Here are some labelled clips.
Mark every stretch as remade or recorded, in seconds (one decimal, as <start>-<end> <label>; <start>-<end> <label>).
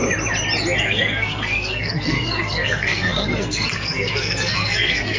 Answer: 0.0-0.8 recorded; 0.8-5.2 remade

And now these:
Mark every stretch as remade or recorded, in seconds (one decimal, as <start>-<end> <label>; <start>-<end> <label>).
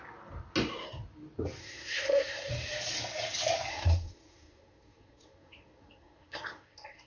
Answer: 0.0-1.6 recorded; 1.6-2.5 remade; 2.5-3.7 recorded; 3.7-7.1 remade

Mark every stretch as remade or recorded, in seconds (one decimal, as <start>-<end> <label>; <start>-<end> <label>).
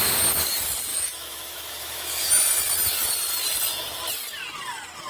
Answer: 0.0-0.9 recorded; 0.9-2.3 remade; 2.3-5.1 recorded